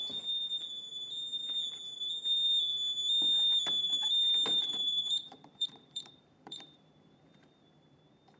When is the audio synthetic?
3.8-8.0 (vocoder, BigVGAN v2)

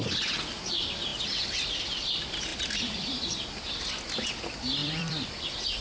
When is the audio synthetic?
2.5-3.4 (vocoder, BigVGAN v2); 4.8-5.3

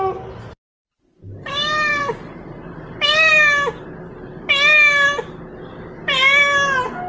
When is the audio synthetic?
1.1-3.3 (vocoder, BigVGAN v2)

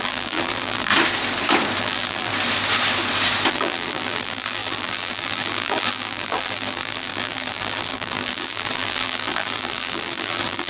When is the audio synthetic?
0.0-0.9 (vocoder, BigVGAN v2); 1.8-2.3; 3.5-10.7